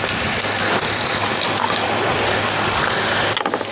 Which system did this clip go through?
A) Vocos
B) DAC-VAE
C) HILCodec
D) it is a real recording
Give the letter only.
D